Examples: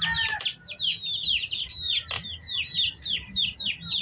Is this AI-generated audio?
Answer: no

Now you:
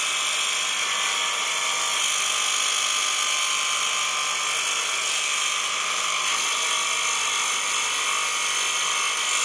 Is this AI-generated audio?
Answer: no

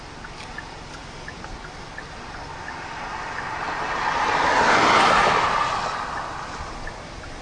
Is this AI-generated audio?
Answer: no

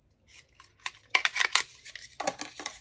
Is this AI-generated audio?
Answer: no